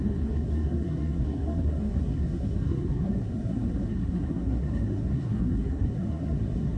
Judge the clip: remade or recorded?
remade